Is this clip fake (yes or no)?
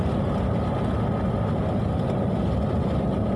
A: no